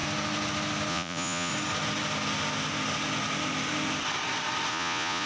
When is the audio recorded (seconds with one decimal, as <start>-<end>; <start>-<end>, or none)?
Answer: 0.0-0.9; 1.5-4.7